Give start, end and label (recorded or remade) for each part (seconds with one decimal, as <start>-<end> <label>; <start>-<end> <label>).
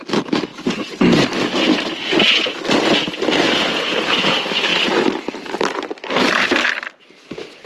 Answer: 0.0-4.7 recorded; 4.7-6.4 remade; 6.4-7.7 recorded